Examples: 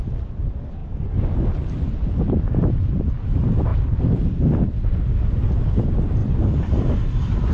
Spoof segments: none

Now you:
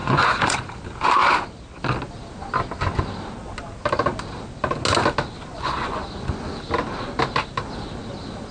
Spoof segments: 0.0-0.6 (vocoder, Vocos); 5.5-6.0